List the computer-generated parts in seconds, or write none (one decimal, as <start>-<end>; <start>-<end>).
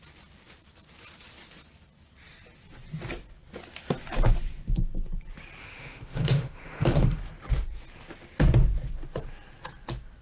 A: 5.6-7.2